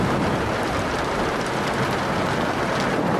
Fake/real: real